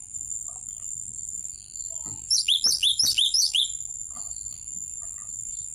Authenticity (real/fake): fake